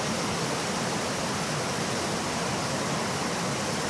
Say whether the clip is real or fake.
real